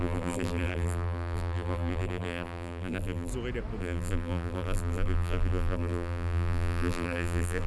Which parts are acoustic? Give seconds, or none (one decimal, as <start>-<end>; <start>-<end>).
3.3-3.8